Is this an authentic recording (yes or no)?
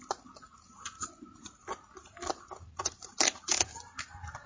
yes